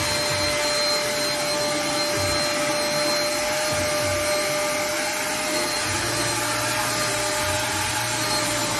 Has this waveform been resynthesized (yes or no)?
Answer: no